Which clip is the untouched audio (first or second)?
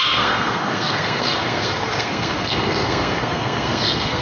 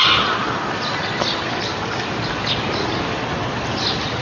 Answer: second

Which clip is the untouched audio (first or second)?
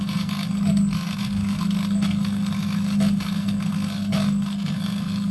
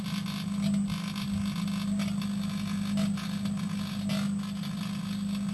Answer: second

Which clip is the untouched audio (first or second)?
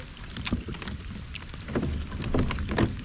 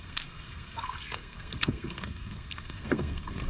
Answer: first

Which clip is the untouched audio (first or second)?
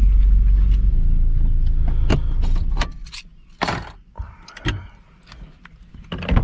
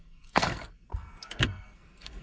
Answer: first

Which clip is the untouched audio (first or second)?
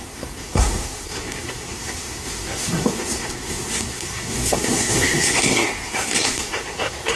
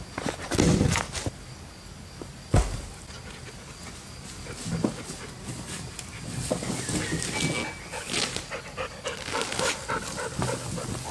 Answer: second